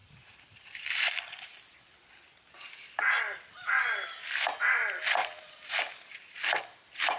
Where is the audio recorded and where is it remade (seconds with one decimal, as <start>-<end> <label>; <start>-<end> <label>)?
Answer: 0.0-1.2 remade; 1.2-5.2 recorded; 5.2-5.8 remade; 5.8-7.2 recorded